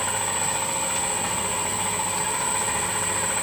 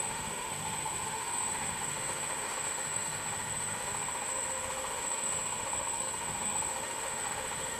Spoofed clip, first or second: second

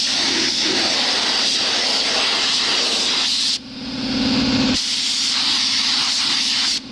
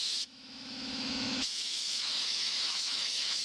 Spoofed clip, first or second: second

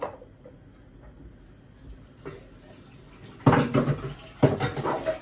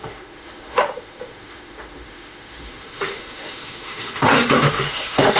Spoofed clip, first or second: second